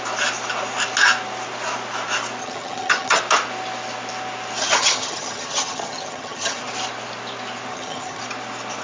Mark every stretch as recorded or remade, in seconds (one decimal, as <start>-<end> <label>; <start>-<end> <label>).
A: 0.0-2.4 recorded; 2.4-3.2 remade; 3.2-4.6 recorded; 4.6-6.6 remade; 6.6-7.7 recorded; 7.7-8.2 remade; 8.2-8.8 recorded